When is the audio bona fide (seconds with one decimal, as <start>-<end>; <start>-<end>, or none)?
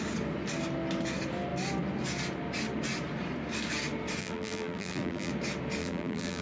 0.0-4.2; 5.3-5.8